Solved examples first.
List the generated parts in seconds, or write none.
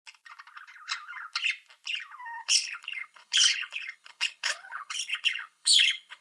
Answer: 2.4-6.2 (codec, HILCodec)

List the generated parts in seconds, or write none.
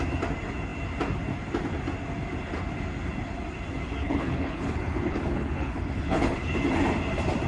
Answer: 4.0-6.5 (codec, HILCodec)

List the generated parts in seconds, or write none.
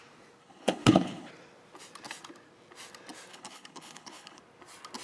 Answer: 0.4-1.3 (codec, HILCodec); 3.3-4.4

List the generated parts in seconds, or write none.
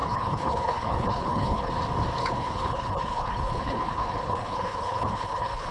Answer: 0.0-1.7 (codec, HILCodec); 2.2-5.7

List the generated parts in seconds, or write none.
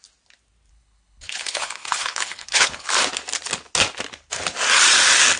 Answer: 0.7-2.9 (codec, HILCodec)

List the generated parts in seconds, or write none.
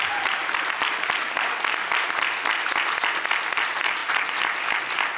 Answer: none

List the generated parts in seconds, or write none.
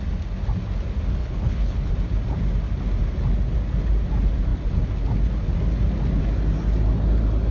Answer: 1.2-1.9 (codec, HILCodec)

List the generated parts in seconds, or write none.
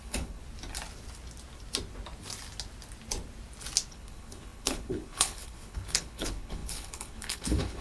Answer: 0.0-0.4 (codec, HILCodec); 3.9-7.8